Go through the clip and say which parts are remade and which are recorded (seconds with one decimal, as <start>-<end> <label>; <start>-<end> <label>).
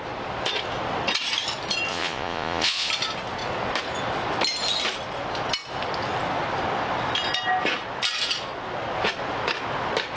0.0-1.9 recorded; 1.9-2.9 remade; 2.9-10.2 recorded